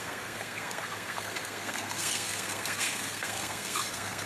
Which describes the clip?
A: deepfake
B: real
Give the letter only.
A